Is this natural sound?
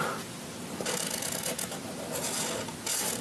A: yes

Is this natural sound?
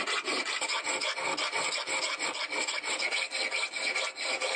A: yes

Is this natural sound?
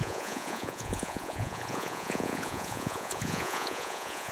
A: no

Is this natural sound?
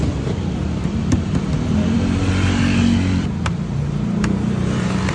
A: no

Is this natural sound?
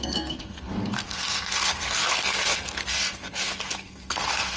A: no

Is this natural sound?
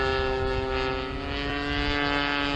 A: yes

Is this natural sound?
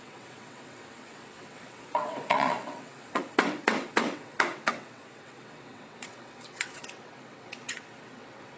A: no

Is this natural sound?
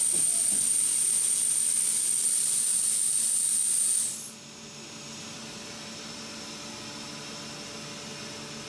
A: yes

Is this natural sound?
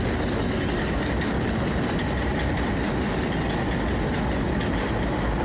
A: yes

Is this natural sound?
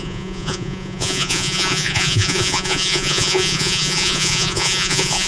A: no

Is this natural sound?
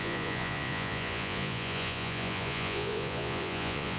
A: no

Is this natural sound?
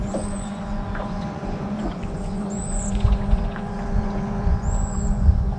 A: no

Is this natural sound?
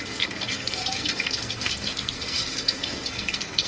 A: no